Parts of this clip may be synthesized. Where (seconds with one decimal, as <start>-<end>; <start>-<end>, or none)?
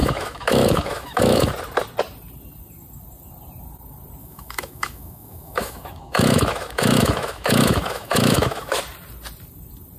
0.0-1.5; 4.2-8.8